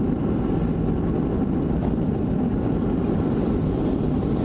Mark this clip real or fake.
real